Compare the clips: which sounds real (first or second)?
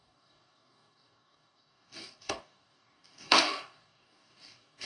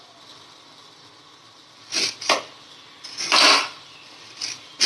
second